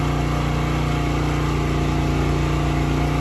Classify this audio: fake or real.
real